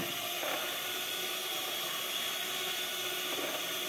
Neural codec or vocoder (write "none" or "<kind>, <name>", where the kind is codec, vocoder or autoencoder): none